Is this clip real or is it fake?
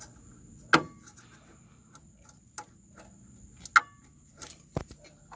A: real